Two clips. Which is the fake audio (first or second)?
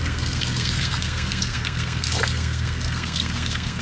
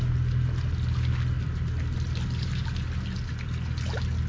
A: first